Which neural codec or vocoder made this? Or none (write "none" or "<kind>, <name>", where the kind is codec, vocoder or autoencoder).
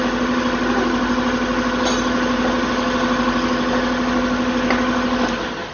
none